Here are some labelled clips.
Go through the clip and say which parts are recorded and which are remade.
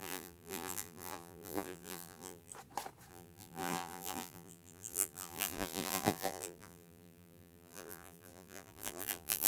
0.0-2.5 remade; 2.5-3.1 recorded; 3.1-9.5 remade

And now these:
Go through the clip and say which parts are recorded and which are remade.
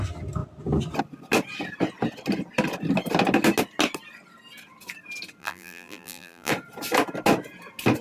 0.0-5.4 recorded; 5.4-6.5 remade; 6.5-8.0 recorded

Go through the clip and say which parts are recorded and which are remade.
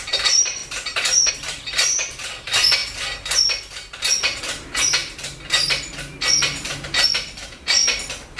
0.0-0.6 remade; 0.6-1.3 recorded; 1.3-2.8 remade; 2.8-4.4 recorded; 4.4-8.4 remade